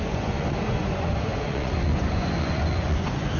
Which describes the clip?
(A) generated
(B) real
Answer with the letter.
A